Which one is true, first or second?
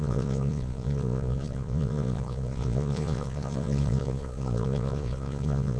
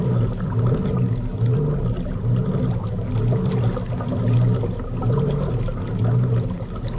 second